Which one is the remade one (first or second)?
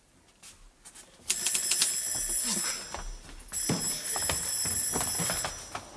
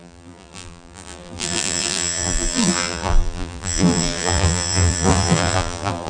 second